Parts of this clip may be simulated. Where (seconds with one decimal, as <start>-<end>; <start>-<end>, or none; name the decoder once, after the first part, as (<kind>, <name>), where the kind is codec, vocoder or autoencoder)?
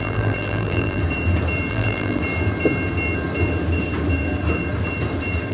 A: 0.0-1.0 (vocoder, BigVGAN v2); 1.7-2.2